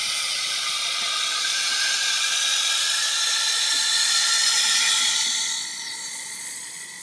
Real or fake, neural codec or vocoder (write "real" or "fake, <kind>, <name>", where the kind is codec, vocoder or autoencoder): fake, vocoder, Vocos